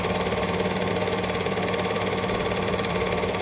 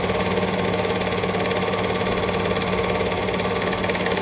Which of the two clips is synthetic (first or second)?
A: first